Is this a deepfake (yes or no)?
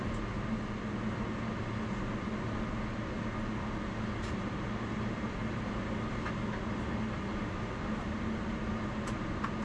no